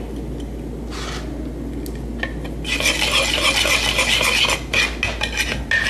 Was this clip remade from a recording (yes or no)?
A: no